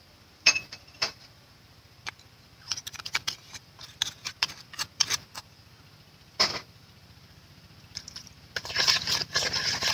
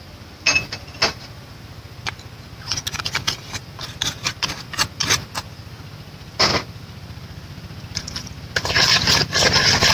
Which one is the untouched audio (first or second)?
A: second